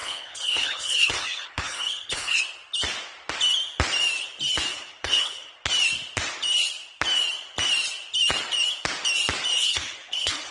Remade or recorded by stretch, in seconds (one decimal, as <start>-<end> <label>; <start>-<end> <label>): 0.0-2.4 remade; 2.4-4.7 recorded; 4.7-5.5 remade; 5.5-9.6 recorded; 9.6-10.5 remade